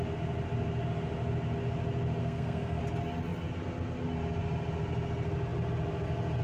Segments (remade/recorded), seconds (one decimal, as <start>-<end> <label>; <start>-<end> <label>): 0.0-2.2 recorded; 2.2-2.8 remade; 2.8-6.4 recorded